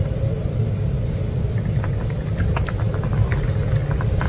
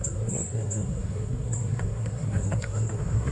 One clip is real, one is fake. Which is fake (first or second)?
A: second